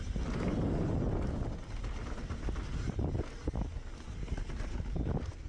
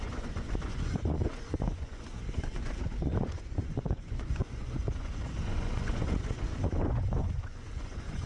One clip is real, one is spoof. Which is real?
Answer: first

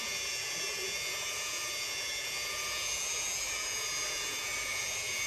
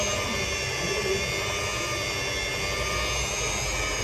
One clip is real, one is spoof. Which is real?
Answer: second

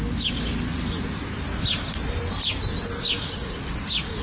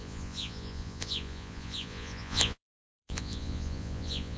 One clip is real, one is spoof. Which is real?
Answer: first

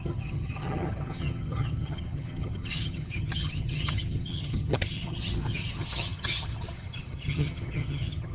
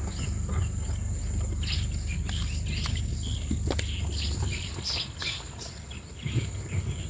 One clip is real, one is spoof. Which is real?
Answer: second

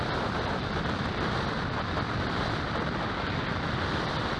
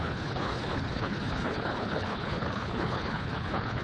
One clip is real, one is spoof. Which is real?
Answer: first